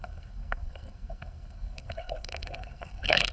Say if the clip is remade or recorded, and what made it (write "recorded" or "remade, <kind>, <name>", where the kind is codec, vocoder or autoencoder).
remade, codec, SNAC